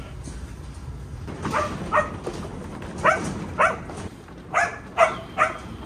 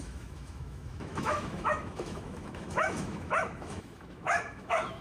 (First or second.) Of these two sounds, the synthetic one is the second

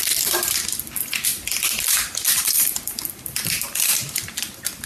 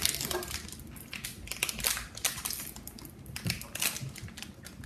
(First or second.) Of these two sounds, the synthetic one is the first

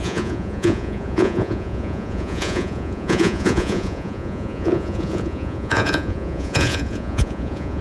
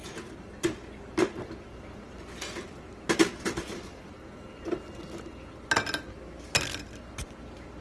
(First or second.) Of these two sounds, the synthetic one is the first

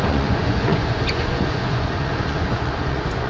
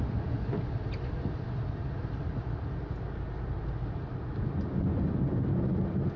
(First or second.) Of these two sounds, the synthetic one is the first